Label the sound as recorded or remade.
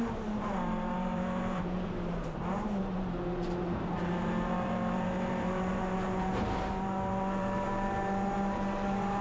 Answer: remade